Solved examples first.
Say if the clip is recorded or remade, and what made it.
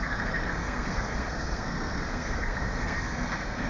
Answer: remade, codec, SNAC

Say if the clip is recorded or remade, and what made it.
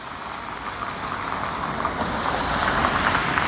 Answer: recorded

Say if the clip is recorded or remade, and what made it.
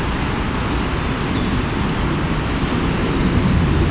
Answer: recorded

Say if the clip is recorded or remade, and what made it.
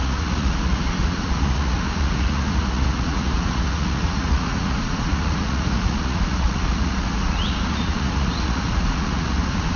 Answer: remade, vocoder, Vocos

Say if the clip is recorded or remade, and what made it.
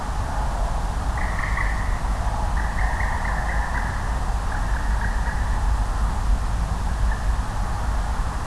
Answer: recorded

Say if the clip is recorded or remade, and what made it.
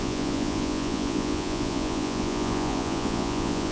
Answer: remade, vocoder, Vocos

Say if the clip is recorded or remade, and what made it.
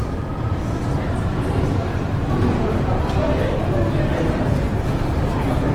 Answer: recorded